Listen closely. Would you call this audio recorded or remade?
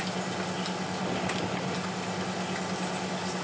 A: recorded